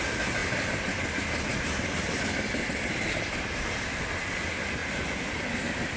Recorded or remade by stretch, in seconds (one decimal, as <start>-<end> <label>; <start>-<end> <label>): 0.0-6.0 recorded